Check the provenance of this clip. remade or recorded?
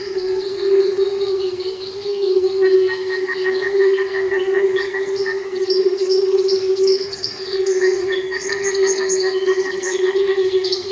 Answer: remade